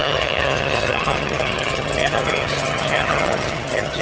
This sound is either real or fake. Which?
fake